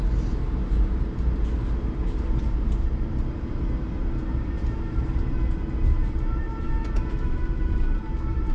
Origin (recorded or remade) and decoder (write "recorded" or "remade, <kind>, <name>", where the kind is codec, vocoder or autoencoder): remade, vocoder, BigVGAN v2